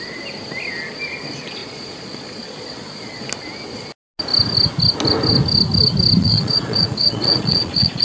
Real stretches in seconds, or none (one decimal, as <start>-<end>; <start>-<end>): 0.0-1.6; 3.3-6.2